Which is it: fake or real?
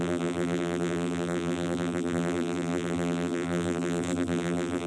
fake